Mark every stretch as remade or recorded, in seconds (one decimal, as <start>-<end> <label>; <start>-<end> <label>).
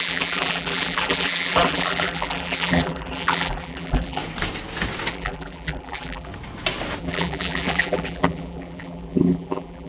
0.0-4.2 remade; 4.2-5.1 recorded; 5.1-6.3 remade; 6.3-7.0 recorded; 7.0-9.9 remade